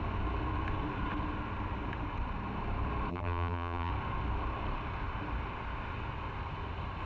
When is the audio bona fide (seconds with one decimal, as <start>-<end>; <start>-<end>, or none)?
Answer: 0.0-3.1; 3.9-7.1